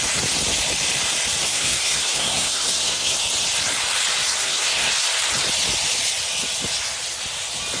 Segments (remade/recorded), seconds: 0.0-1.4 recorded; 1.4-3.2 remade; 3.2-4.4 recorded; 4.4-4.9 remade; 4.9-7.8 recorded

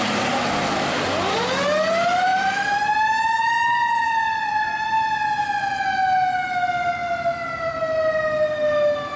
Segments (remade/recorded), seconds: 0.0-9.2 recorded

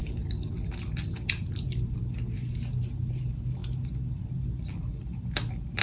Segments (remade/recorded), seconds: 0.0-5.8 recorded

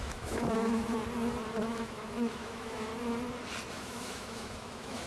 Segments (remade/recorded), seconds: 0.0-1.0 remade; 1.0-1.6 recorded; 1.6-2.9 remade; 2.9-3.7 recorded; 3.7-5.1 remade

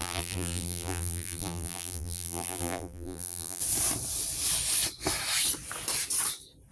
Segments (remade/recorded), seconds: 0.0-3.6 remade; 3.6-6.7 recorded